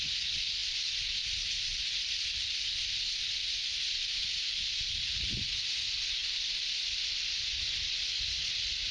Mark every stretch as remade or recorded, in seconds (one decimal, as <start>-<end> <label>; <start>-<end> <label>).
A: 0.0-8.9 recorded